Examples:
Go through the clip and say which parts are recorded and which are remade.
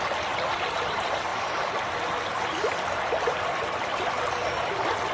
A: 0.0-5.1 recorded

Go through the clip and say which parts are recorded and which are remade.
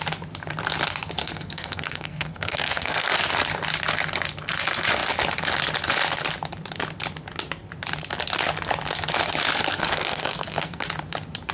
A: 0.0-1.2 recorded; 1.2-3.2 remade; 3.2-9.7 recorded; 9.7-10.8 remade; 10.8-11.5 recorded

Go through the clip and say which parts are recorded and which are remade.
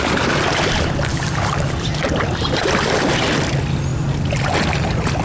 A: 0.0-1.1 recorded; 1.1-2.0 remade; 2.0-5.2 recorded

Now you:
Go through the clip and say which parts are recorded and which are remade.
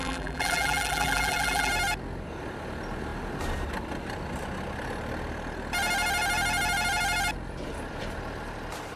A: 0.0-1.7 remade; 1.7-9.0 recorded